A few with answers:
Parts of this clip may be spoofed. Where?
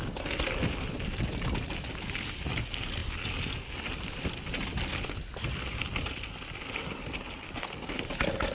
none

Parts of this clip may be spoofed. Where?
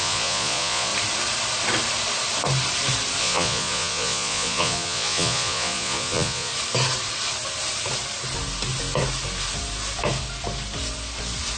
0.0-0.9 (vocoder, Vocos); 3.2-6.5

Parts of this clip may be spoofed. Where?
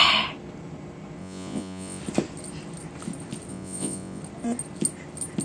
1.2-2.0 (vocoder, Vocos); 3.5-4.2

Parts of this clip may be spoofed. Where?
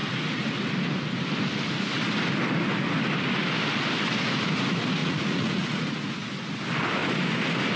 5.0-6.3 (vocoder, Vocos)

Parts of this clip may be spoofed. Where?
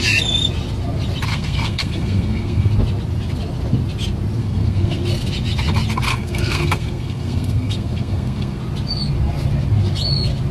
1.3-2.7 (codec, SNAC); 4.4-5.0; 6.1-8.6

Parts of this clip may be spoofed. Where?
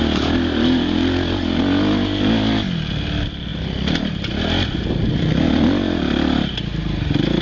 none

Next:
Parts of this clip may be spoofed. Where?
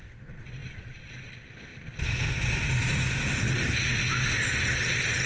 none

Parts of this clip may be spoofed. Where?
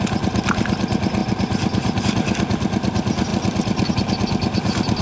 none